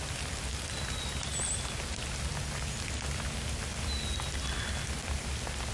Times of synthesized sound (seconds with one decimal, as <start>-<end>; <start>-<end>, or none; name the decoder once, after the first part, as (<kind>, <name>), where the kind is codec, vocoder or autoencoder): none

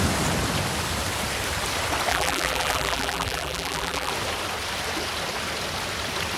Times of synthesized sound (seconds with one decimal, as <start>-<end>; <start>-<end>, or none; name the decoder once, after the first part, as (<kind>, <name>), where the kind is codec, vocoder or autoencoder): 2.1-4.1 (vocoder, BigVGAN v2)

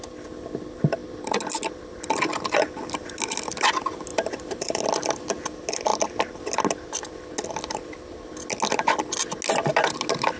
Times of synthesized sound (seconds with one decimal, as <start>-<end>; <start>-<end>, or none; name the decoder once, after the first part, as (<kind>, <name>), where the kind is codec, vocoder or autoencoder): 4.1-4.8 (vocoder, BigVGAN v2)